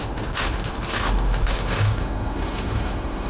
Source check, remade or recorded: remade